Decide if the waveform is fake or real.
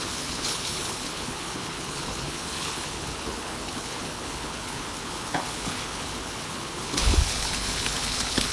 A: fake